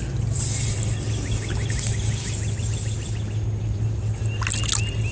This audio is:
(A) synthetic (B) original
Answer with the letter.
B